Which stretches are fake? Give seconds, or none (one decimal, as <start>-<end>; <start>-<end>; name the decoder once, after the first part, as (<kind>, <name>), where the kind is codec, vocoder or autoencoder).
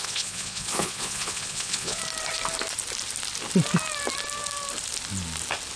0.0-2.0 (vocoder, Vocos)